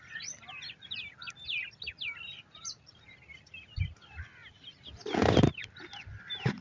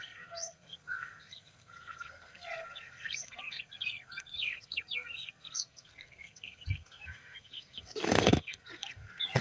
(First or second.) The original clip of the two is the first